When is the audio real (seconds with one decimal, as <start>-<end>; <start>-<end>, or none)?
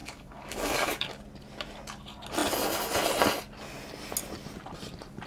1.2-5.3